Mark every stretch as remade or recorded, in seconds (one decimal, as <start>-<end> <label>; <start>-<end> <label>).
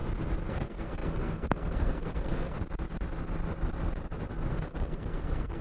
0.0-0.5 recorded; 0.5-2.6 remade; 2.6-4.5 recorded; 4.5-5.6 remade